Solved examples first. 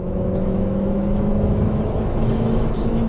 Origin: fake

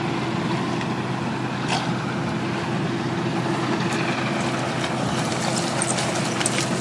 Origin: real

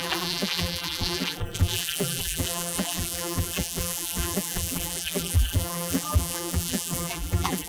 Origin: fake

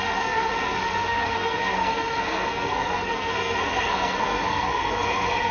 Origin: fake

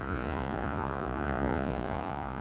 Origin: fake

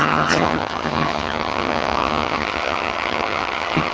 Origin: fake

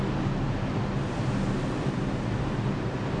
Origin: real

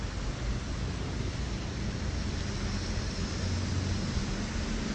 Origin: real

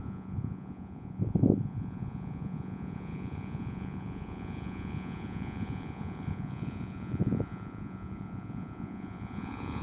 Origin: fake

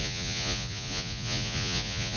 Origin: fake